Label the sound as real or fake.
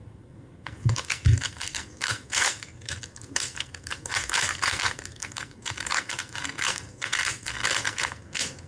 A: fake